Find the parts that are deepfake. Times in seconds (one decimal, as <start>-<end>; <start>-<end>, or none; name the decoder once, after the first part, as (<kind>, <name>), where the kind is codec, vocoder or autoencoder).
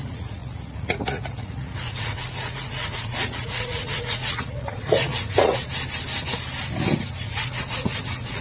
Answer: 0.0-5.6 (vocoder, Vocos); 7.2-8.4